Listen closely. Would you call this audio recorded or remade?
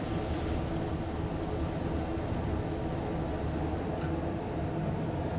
recorded